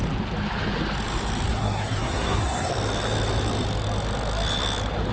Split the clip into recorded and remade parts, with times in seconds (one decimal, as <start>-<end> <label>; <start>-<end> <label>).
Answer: 0.0-1.5 recorded; 1.5-2.7 remade; 2.7-5.1 recorded